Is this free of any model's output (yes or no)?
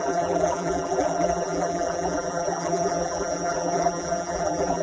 no